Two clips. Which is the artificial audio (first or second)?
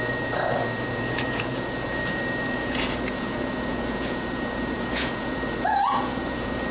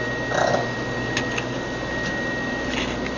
first